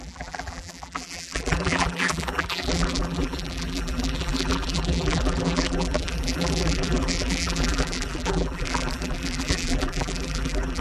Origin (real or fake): fake